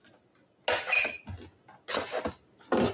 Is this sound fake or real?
real